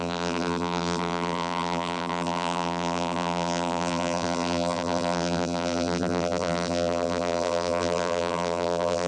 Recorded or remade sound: remade